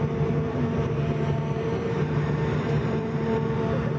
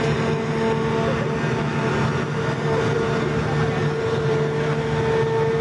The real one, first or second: second